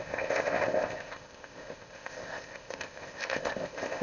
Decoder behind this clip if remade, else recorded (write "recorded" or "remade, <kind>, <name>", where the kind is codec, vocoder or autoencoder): remade, codec, ZipCodec